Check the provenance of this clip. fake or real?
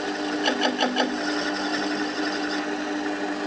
real